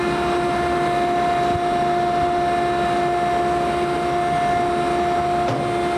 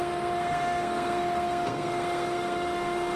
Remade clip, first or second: second